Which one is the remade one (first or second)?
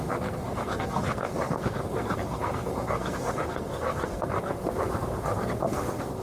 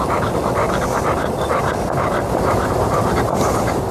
first